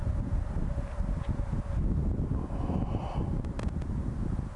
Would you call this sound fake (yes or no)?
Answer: no